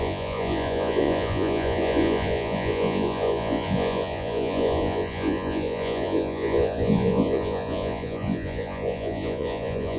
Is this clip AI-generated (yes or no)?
yes